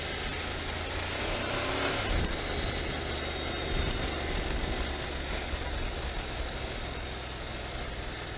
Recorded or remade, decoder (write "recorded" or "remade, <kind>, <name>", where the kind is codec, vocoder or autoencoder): recorded